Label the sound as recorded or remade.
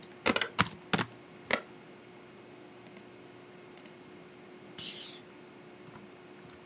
recorded